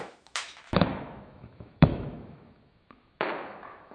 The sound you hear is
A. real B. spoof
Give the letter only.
B